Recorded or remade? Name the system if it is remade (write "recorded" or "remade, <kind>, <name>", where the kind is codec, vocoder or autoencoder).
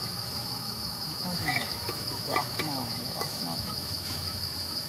remade, autoencoder, DAC-VAE